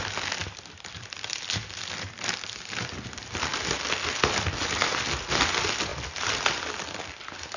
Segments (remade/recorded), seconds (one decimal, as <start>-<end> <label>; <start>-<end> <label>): 0.0-0.4 recorded; 0.4-5.0 remade; 5.0-5.9 recorded; 5.9-7.6 remade